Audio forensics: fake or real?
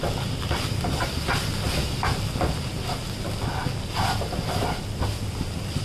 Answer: real